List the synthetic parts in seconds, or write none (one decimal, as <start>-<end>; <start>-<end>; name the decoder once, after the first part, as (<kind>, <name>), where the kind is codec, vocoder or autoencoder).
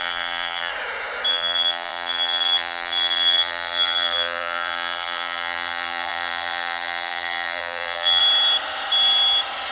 0.0-0.7 (vocoder, BigVGAN v2); 1.3-8.2